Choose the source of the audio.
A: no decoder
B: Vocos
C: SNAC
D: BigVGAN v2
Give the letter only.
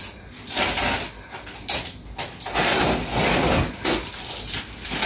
A